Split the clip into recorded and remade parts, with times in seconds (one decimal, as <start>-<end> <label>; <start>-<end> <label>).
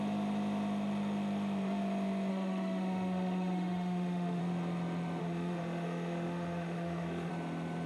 0.0-2.3 recorded; 2.3-4.4 remade; 4.4-5.2 recorded; 5.2-7.3 remade; 7.3-7.9 recorded